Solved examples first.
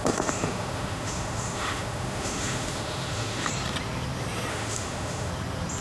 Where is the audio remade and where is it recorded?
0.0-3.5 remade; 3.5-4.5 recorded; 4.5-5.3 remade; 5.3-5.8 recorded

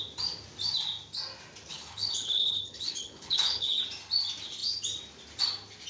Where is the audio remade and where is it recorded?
0.0-1.7 recorded; 1.7-3.8 remade; 3.8-5.9 recorded